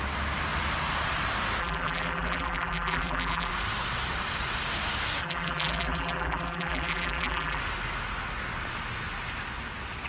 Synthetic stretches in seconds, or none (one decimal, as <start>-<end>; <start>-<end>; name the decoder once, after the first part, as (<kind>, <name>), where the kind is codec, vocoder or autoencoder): 1.6-3.5 (vocoder, BigVGAN v2); 5.2-7.6